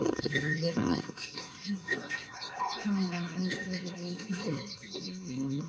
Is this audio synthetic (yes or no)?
yes